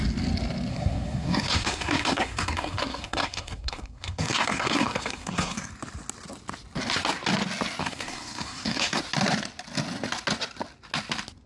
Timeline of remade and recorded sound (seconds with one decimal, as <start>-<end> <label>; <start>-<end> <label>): 0.0-0.7 recorded; 0.7-5.7 remade; 5.7-7.8 recorded; 7.8-9.0 remade; 9.0-11.5 recorded